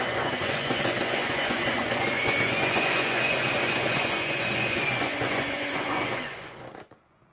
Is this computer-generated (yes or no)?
yes